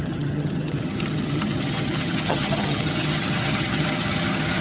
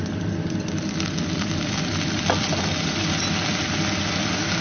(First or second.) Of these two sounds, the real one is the second